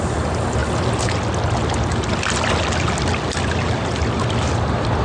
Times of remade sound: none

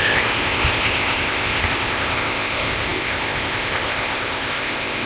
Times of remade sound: 0.0-5.1 (codec, ZipCodec)

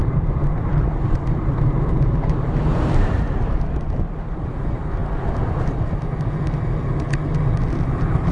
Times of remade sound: 0.0-5.0 (vocoder, BigVGAN v2); 7.8-8.3